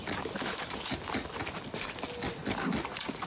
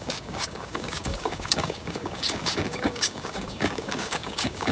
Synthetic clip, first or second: second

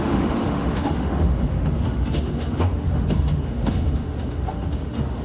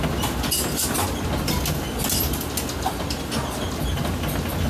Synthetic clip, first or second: first